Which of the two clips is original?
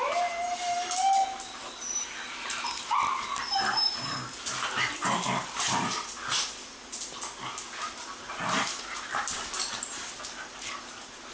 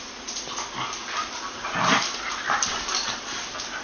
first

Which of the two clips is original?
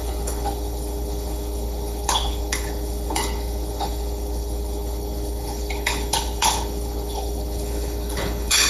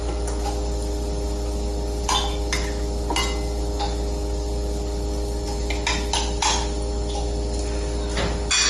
second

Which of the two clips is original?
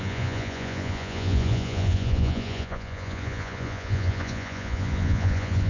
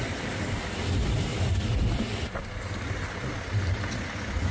second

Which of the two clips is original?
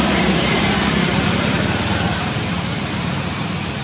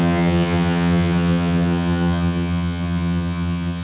first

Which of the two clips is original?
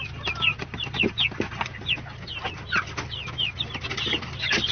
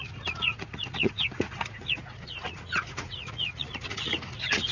first